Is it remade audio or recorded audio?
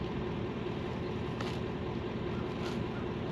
recorded